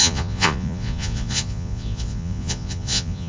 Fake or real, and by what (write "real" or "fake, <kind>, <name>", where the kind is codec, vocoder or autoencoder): fake, vocoder, Vocos